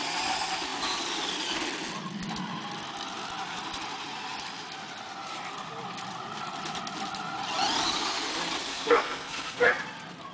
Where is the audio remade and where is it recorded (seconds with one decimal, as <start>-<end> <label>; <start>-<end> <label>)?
0.0-8.7 recorded; 8.7-9.8 remade; 9.8-10.3 recorded